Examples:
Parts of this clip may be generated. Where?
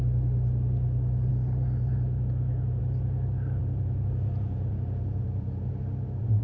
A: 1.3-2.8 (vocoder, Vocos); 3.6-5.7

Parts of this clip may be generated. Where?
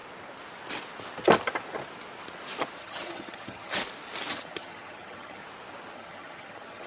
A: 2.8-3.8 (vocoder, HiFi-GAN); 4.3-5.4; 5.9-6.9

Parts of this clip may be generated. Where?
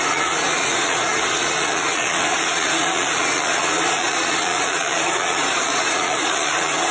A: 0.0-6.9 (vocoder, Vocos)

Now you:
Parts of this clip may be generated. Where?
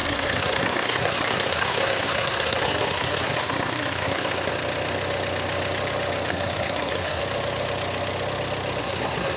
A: 0.0-4.5 (codec, SNAC); 6.3-7.2; 8.8-9.4